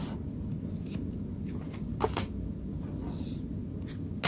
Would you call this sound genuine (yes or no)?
yes